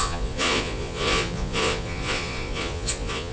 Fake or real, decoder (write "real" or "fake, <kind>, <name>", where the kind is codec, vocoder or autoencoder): fake, vocoder, Vocos